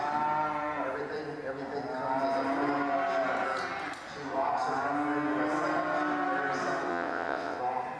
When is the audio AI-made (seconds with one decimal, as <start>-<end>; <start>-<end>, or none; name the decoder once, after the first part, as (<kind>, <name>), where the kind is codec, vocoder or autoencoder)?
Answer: 6.9-7.6 (vocoder, WaveNeXt)